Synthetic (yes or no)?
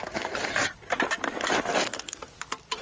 no